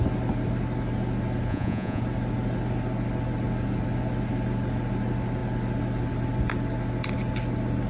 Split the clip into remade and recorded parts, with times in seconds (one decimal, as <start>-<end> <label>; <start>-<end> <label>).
0.0-1.5 recorded; 1.5-2.0 remade; 2.0-7.9 recorded